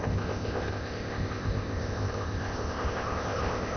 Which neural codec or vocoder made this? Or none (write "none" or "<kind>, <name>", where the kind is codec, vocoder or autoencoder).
codec, ZipCodec